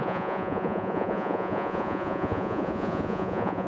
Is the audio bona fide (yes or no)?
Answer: no